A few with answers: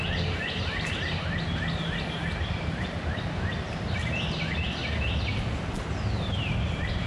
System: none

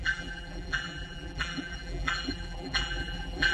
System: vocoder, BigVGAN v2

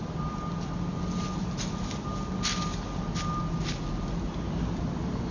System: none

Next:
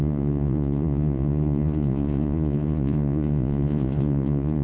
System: vocoder, Vocos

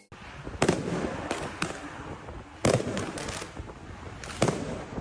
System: none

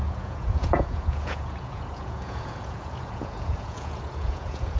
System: vocoder, Vocos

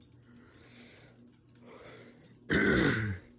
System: none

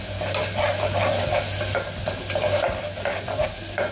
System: none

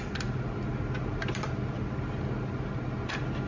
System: none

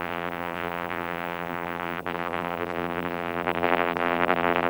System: vocoder, BigVGAN v2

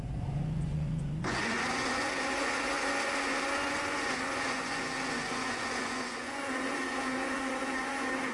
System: vocoder, Vocos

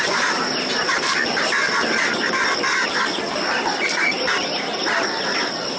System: none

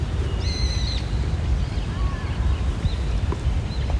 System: none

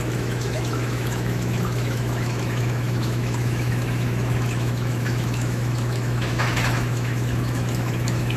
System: autoencoder, DAC-VAE